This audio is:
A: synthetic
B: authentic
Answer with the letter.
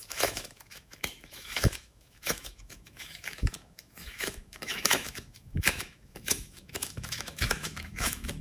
A